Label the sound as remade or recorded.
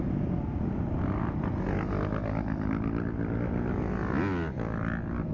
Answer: recorded